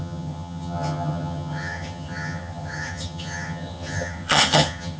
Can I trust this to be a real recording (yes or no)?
no